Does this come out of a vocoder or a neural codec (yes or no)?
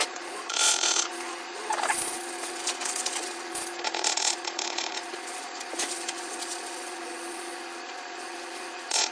yes